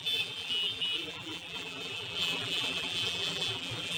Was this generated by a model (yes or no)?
yes